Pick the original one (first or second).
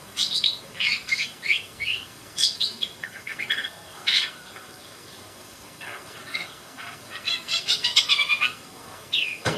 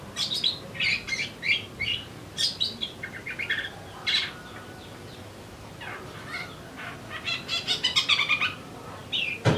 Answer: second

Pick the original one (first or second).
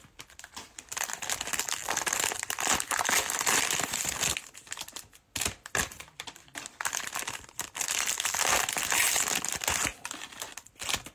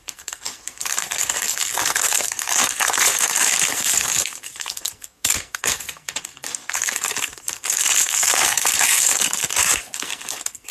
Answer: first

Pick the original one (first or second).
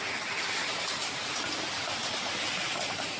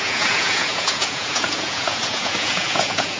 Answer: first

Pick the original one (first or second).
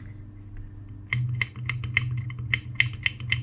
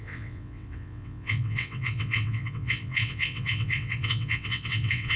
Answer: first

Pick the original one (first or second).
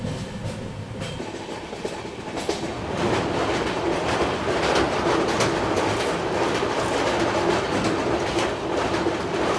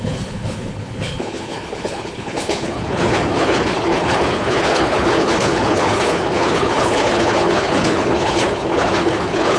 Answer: first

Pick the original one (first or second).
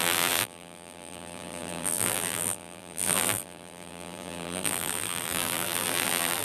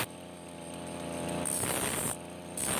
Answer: second